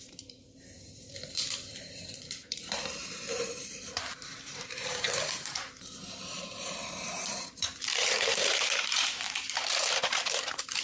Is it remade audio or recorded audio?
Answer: remade